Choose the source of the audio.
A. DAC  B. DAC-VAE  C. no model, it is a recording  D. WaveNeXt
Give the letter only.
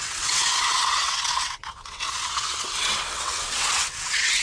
D